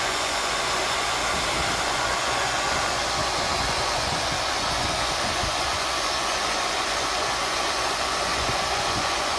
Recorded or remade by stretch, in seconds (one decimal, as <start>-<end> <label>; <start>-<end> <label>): 0.0-1.2 remade; 1.2-1.8 recorded; 1.8-9.4 remade